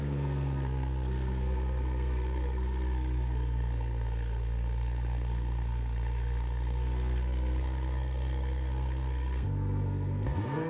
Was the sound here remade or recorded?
remade